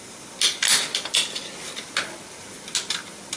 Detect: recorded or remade recorded